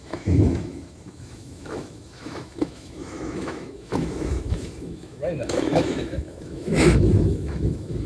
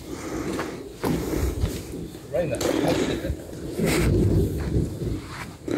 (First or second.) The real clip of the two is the second